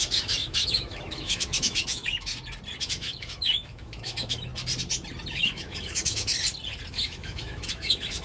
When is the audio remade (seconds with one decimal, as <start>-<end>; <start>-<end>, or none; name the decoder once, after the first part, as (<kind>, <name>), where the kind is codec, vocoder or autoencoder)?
0.0-2.3 (autoencoder, DAC-VAE); 2.8-4.5; 5.3-6.3; 6.9-8.2